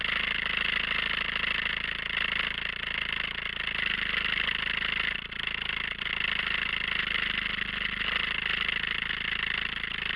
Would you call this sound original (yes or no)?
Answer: yes